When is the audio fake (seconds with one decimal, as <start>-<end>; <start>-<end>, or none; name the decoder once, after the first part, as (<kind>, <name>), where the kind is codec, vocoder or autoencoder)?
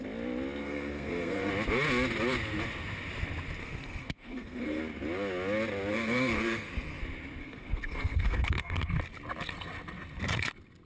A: 0.6-1.5 (codec, SNAC); 3.6-4.8; 5.9-7.0; 7.4-8.9